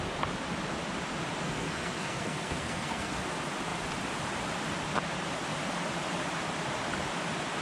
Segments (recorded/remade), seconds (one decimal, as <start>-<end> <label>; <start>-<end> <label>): 0.0-1.4 recorded; 1.4-3.2 remade; 3.2-7.6 recorded